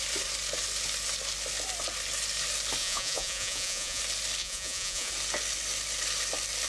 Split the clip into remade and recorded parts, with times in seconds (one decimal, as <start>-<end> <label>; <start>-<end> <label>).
0.0-2.8 recorded; 2.8-4.0 remade; 4.0-4.4 recorded; 4.4-5.1 remade; 5.1-6.7 recorded